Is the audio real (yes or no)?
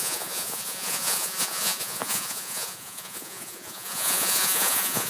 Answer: no